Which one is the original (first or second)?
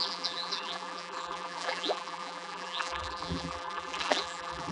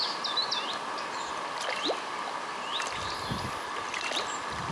second